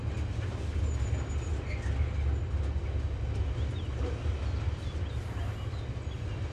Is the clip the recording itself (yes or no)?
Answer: yes